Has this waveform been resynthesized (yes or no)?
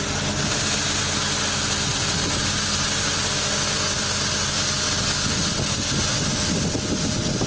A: no